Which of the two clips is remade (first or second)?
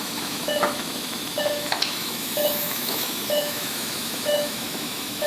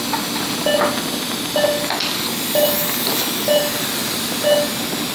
first